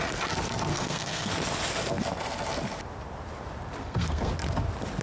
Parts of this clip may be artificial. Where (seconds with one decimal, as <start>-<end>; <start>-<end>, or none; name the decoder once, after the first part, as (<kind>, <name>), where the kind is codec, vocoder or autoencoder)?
0.7-1.3 (codec, SNAC); 3.8-4.3